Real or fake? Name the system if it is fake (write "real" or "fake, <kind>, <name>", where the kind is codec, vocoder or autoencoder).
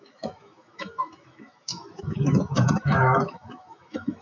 fake, autoencoder, DAC-VAE